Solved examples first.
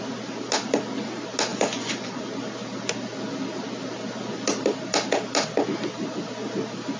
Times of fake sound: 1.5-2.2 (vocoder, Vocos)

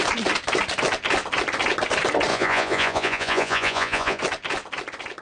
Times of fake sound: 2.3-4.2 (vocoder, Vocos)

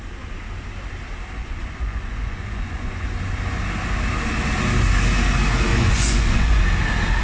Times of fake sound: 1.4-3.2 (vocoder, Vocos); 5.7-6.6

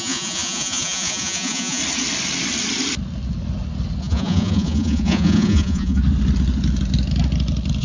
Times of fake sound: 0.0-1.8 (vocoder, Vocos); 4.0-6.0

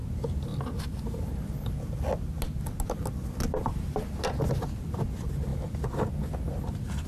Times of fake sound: none